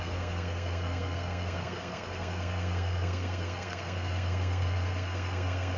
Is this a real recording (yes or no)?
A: no